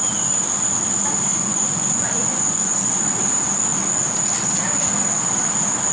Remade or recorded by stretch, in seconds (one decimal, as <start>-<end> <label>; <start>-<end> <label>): 0.0-1.3 recorded; 1.3-3.0 remade; 3.0-5.9 recorded